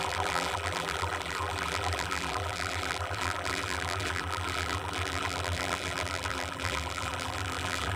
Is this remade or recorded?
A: remade